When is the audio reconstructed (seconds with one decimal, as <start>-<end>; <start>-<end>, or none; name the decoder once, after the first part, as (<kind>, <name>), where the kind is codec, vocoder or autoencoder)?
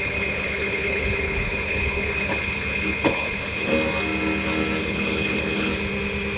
0.0-3.7 (codec, HILCodec); 4.8-5.7